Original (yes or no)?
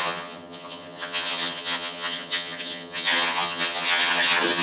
no